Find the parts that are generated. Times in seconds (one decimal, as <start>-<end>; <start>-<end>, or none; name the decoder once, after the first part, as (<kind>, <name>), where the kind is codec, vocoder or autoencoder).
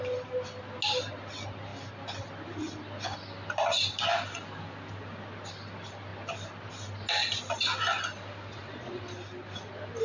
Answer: 8.5-9.0 (vocoder, Vocos)